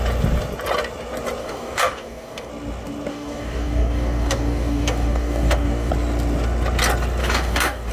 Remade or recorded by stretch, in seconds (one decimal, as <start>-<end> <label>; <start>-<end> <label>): 0.0-1.4 recorded; 1.4-2.5 remade; 2.5-3.1 recorded; 3.1-5.9 remade; 5.9-7.2 recorded; 7.2-7.9 remade